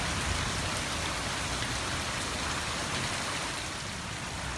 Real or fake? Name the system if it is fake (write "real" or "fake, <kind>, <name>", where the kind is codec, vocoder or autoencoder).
real